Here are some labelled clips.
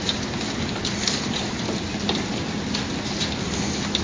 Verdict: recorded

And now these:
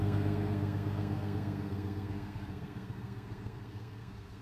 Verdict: remade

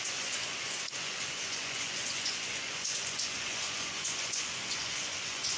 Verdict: remade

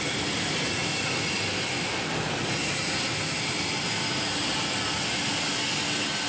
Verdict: recorded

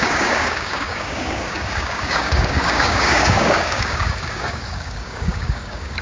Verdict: remade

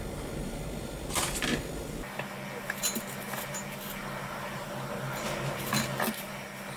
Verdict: recorded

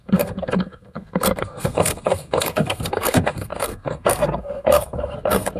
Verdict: remade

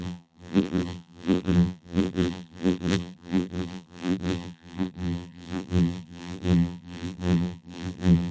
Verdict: remade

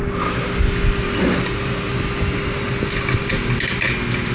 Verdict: recorded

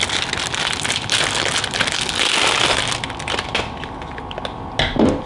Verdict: recorded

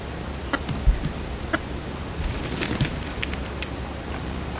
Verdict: recorded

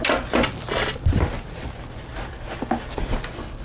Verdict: recorded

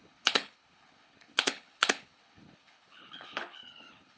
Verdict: remade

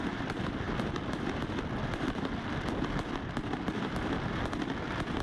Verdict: remade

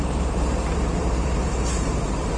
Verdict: remade